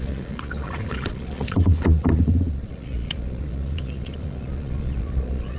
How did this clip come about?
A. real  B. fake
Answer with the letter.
B